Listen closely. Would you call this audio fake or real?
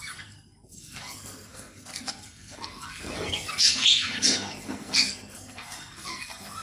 fake